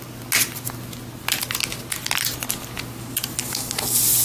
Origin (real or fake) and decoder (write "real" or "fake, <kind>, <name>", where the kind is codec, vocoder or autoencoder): real